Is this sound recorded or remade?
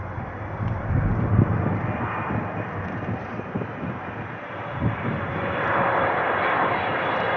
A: remade